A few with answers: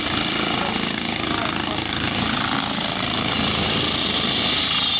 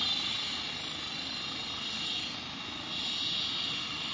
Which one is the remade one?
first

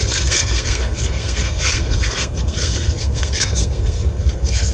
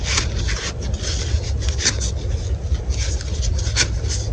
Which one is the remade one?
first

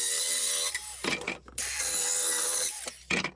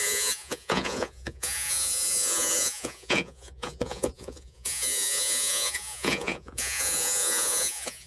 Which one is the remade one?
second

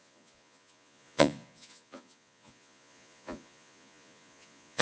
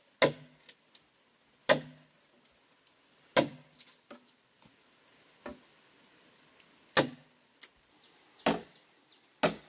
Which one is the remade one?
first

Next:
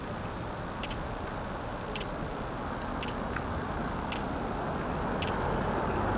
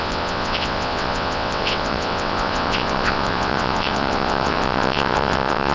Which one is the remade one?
second